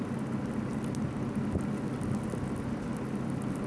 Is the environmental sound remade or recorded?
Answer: recorded